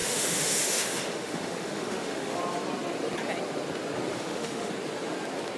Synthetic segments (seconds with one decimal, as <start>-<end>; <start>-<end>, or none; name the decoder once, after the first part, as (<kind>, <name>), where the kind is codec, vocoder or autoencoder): 0.0-2.4 (autoencoder, DAC-VAE); 4.1-4.7